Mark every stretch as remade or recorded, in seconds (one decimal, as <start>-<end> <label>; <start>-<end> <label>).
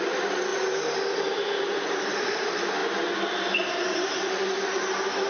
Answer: 0.0-0.5 remade; 0.5-2.0 recorded; 2.0-5.3 remade